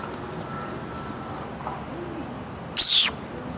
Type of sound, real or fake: real